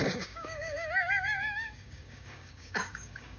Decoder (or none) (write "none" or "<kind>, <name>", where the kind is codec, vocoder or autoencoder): codec, DAC